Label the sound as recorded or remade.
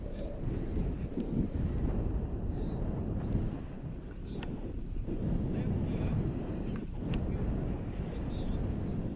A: recorded